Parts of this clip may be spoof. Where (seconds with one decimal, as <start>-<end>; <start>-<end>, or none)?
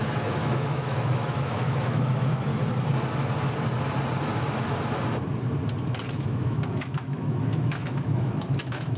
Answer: 0.0-2.5; 6.1-9.0